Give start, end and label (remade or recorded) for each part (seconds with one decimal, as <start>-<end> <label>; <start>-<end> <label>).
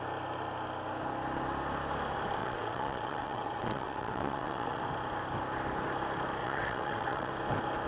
0.0-2.4 recorded; 2.4-4.8 remade; 4.8-6.4 recorded; 6.4-7.3 remade; 7.3-7.9 recorded